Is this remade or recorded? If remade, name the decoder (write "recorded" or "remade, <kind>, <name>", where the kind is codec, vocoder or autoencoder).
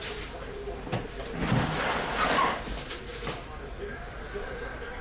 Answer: remade, vocoder, BigVGAN v2